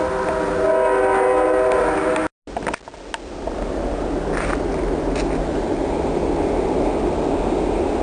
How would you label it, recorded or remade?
recorded